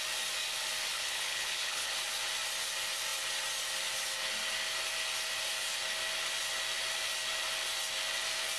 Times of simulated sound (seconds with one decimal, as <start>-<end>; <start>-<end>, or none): 0.9-1.9

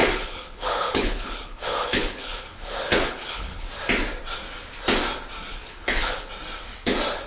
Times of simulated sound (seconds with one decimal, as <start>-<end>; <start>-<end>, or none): 0.0-3.7; 5.5-6.3

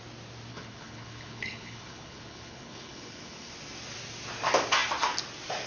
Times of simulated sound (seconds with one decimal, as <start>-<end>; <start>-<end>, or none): 0.5-3.5

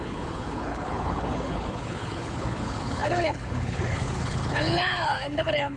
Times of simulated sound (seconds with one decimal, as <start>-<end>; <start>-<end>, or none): 0.0-5.8

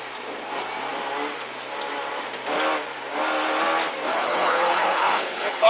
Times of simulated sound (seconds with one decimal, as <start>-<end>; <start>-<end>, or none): 4.1-5.7

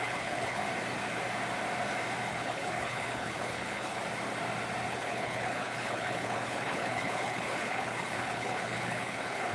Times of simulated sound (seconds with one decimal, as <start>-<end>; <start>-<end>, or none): 0.0-0.6; 2.3-4.0; 4.9-9.5